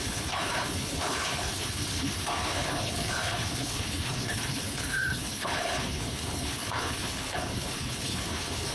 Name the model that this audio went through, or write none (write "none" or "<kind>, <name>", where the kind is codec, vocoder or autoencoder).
codec, HILCodec